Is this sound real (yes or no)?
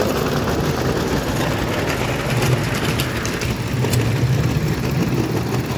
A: yes